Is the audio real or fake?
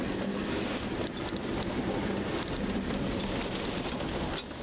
real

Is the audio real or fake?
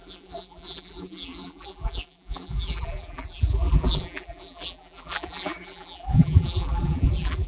fake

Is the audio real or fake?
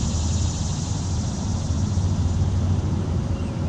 fake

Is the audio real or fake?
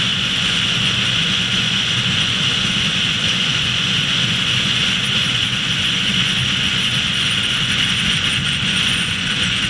fake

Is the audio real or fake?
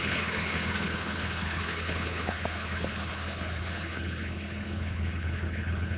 fake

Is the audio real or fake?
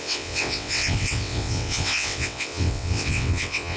fake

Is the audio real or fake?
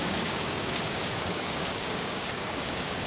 fake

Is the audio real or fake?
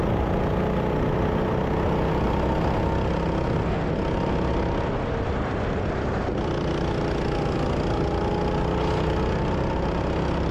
real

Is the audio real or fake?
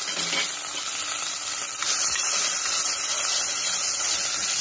real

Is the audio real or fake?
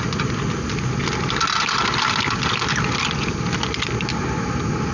real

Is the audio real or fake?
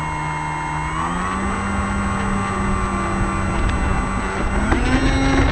real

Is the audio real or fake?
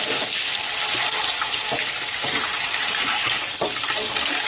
real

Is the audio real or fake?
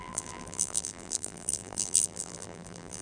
fake